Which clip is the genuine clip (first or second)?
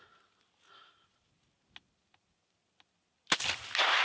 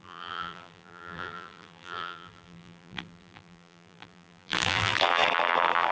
first